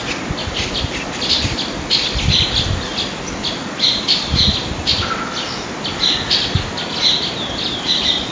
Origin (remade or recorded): recorded